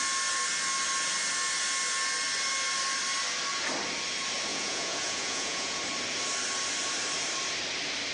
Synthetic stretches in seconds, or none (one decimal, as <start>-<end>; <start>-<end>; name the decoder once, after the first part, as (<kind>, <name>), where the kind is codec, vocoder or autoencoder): 4.5-5.8 (vocoder, Vocos)